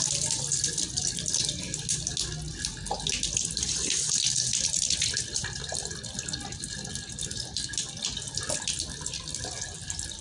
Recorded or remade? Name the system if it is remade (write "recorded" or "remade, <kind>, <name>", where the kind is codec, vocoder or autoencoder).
recorded